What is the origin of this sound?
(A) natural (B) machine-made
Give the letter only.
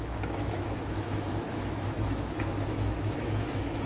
B